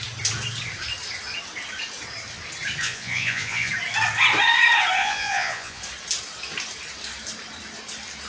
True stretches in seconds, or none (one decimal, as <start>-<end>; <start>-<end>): 0.0-2.8; 3.7-5.0; 5.8-8.3